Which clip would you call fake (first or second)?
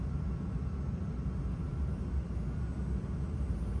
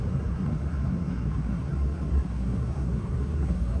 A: second